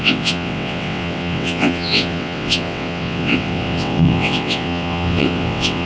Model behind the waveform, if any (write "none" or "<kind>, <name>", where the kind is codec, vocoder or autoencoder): vocoder, WaveNeXt